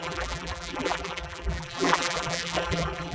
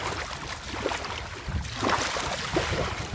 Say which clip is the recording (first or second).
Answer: second